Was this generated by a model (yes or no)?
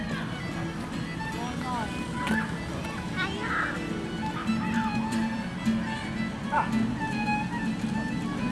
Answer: no